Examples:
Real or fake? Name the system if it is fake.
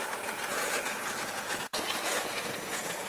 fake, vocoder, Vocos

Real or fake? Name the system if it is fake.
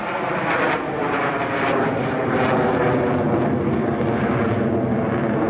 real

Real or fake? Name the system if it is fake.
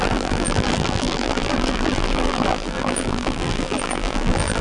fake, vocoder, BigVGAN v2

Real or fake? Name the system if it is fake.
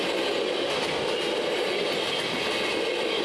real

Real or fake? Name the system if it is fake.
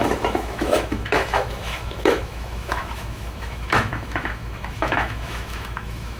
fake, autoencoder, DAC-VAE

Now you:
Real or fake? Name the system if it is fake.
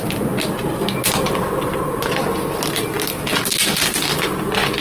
real